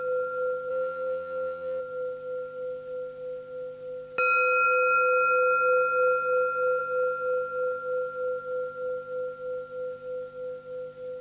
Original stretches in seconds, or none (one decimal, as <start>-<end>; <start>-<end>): 0.0-0.7; 1.8-11.2